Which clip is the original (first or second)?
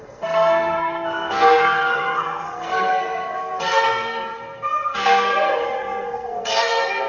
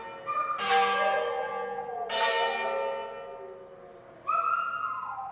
second